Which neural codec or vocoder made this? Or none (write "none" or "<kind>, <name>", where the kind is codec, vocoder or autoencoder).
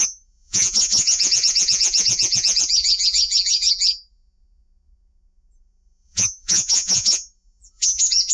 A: vocoder, Vocos